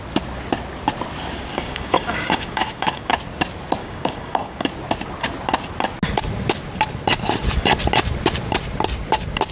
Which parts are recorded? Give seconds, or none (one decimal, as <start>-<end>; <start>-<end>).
0.0-1.5; 3.1-3.8; 4.7-9.5